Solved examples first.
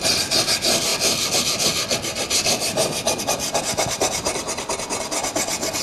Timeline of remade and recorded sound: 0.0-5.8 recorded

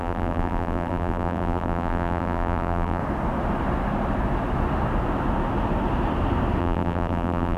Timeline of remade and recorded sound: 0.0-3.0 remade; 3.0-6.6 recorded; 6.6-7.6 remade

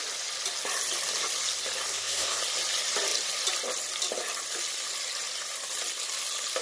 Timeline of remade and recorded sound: 0.0-1.9 recorded; 1.9-2.4 remade; 2.4-6.6 recorded

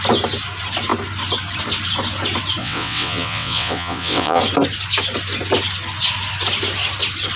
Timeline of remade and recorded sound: 0.0-2.6 recorded; 2.6-4.4 remade; 4.4-7.4 recorded

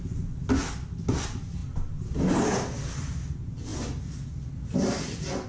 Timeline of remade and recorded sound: 0.0-5.5 recorded